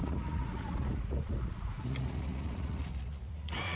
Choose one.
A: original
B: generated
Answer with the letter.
B